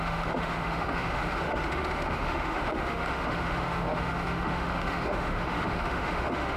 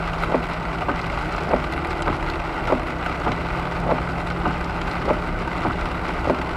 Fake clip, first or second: first